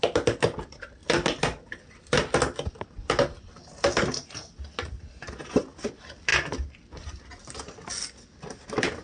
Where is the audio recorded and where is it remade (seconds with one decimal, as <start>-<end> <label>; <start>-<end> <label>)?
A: 0.0-9.0 recorded